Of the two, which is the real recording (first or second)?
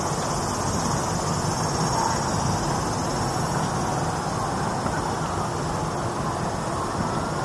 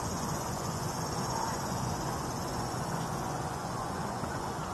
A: first